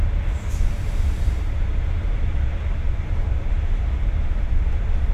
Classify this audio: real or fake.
fake